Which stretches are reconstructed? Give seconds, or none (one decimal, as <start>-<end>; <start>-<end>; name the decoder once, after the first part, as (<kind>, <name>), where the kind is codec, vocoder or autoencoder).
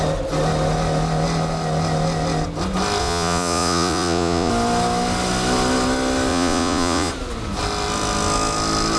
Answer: 3.0-4.5 (vocoder, Vocos); 6.3-7.1